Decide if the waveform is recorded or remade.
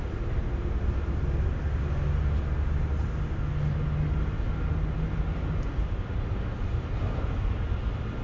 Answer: recorded